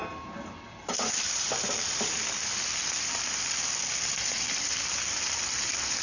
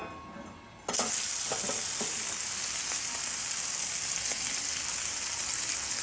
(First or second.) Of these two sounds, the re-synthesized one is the first